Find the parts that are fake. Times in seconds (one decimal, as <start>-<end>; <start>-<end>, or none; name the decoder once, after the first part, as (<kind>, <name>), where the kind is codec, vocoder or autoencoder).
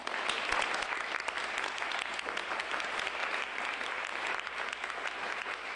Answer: 3.2-5.8 (vocoder, BigVGAN v2)